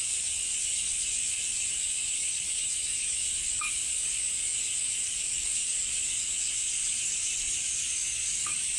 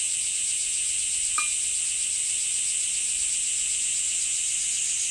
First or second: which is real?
second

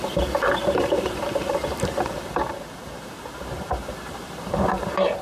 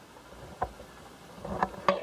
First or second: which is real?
second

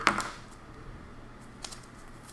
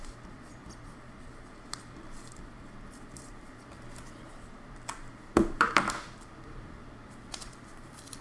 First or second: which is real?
first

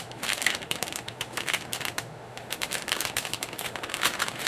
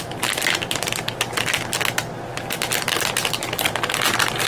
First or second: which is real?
second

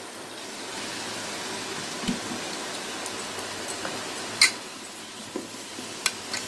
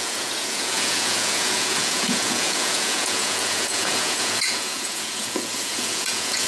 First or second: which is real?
first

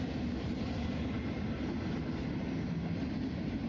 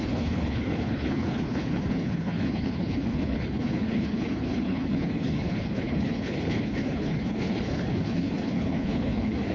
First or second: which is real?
first